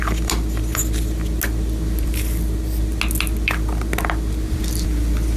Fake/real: real